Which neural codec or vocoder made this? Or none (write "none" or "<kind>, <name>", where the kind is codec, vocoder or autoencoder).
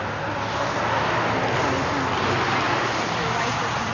none